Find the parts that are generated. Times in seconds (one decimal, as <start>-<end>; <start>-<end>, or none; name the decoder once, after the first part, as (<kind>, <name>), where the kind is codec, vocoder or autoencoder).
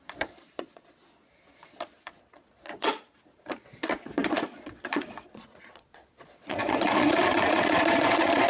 0.0-8.5 (vocoder, Vocos)